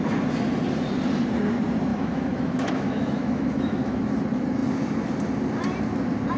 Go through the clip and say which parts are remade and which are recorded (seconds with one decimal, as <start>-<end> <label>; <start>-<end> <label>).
0.0-1.9 recorded; 1.9-4.1 remade; 4.1-6.4 recorded